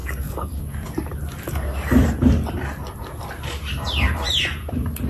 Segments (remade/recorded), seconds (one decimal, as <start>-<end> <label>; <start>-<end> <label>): 0.0-0.6 remade; 0.6-5.1 recorded